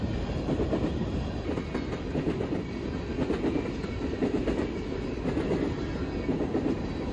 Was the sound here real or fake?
real